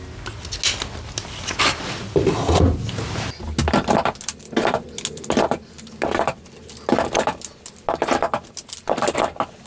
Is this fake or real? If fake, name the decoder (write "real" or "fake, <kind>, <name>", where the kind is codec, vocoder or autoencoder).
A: real